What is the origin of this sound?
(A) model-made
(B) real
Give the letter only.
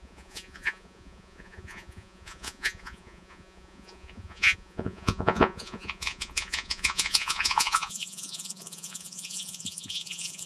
A